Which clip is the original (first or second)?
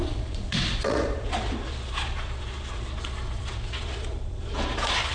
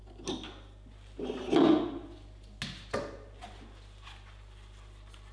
second